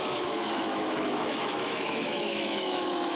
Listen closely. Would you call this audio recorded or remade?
remade